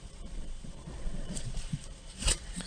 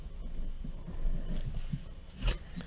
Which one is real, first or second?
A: second